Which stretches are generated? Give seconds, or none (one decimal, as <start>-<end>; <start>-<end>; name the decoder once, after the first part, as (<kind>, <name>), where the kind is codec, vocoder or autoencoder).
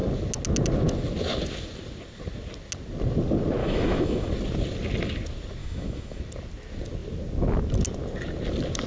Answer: 3.6-4.3 (autoencoder, DAC-VAE); 5.6-6.2